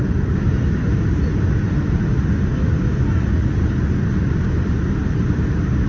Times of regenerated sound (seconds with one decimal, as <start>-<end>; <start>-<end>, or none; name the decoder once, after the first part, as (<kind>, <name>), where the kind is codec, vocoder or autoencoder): none